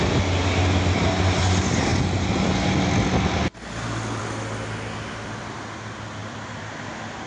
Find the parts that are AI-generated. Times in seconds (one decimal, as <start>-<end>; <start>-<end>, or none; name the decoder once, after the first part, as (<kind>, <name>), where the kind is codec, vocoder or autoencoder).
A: none